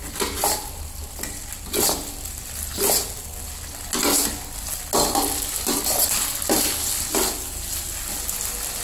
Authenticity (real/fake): real